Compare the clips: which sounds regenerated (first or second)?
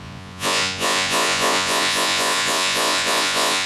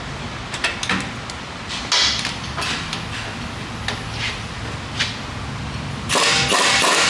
first